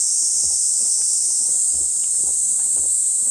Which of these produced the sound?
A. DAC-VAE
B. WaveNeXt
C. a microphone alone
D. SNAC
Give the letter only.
C